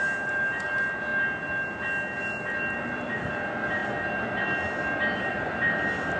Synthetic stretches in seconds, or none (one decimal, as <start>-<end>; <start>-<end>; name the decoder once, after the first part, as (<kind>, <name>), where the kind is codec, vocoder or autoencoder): none